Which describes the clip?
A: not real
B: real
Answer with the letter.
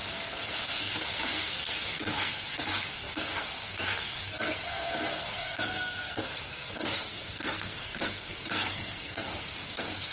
A